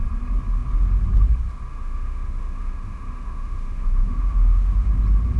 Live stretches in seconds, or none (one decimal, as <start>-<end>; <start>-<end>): 0.0-1.7; 4.9-5.4